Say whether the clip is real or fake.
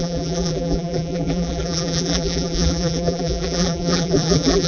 fake